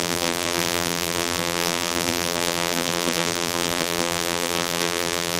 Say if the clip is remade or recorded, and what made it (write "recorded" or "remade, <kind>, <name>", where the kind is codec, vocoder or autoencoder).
remade, vocoder, BigVGAN v2